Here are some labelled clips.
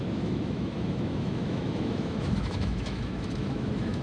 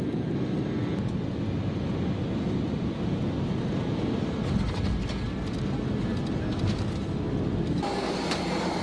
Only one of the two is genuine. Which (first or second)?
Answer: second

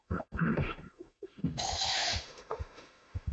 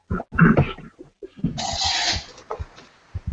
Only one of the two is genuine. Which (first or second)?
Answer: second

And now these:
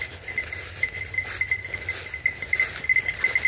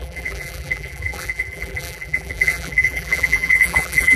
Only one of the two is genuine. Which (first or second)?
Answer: first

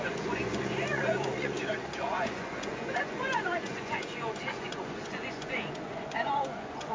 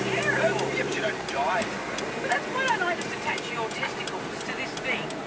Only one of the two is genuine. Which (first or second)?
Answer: second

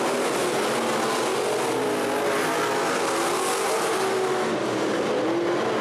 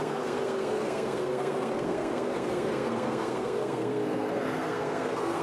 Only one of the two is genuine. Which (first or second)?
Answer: first